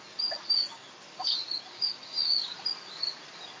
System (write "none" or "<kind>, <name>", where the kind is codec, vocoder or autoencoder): none